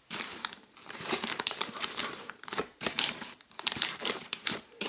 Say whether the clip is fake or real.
fake